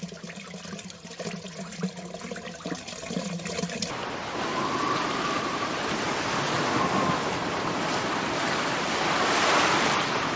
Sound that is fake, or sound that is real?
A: real